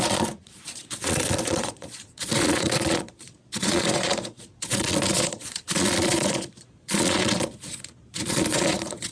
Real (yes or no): no